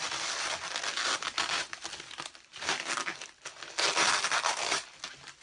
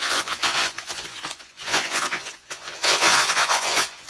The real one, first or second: first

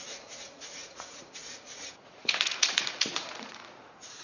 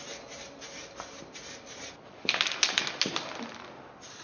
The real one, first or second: second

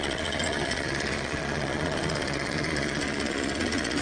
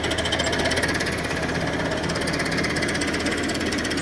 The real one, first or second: second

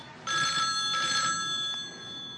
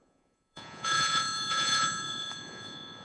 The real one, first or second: first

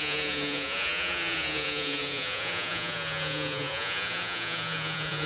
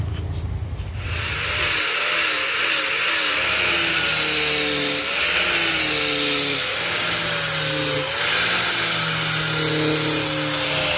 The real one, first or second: second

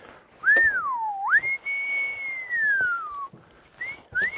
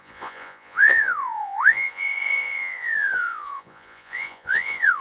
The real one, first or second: first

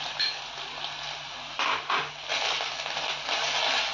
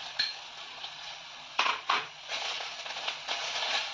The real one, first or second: first